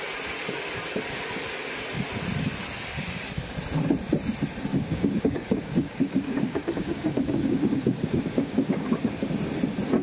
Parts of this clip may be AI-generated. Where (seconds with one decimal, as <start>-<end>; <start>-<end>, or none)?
4.7-9.3

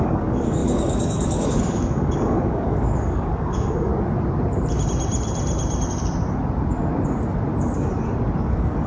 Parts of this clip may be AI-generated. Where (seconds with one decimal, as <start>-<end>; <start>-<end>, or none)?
0.0-3.9; 8.4-8.9

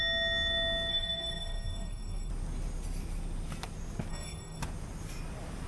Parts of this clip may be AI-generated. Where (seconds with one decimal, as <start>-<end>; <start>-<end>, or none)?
0.9-2.3; 4.1-4.6

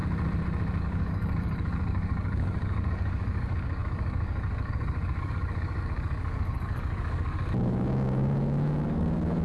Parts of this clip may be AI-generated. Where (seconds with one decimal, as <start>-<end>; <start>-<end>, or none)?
0.8-9.4

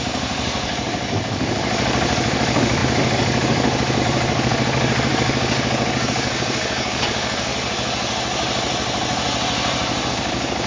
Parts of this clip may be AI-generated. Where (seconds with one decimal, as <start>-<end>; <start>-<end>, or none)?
0.0-7.5; 10.1-10.7